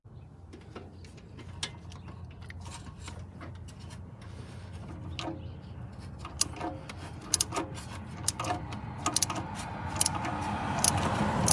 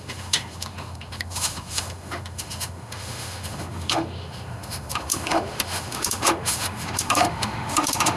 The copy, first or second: second